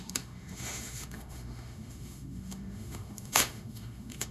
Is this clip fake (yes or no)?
yes